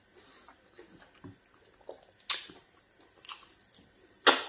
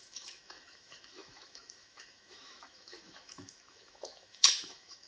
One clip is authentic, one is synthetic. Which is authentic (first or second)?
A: first